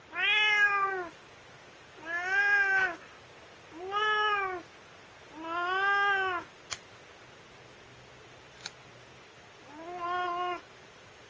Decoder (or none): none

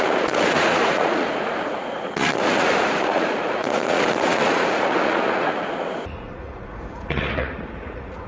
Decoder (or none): vocoder, Vocos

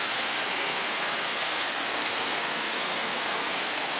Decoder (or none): codec, SNAC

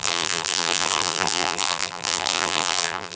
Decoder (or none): vocoder, BigVGAN v2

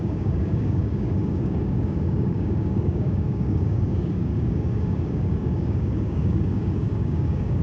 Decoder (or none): codec, DAC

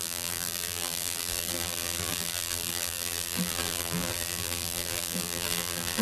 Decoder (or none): vocoder, BigVGAN v2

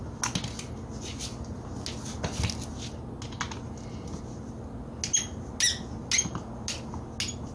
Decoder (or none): none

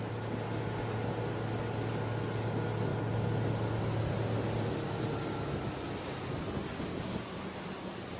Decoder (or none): none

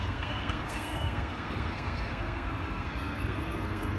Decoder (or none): codec, SNAC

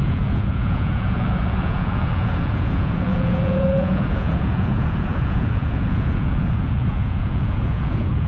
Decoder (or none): vocoder, Vocos